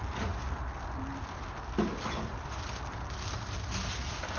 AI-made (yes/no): no